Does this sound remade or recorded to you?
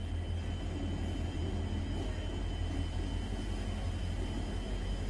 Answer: recorded